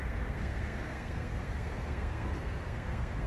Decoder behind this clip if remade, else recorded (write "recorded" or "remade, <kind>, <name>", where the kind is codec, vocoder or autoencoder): remade, codec, SNAC